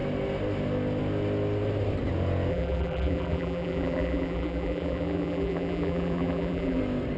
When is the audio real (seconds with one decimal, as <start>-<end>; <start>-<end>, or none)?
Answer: 0.0-2.5; 6.8-7.2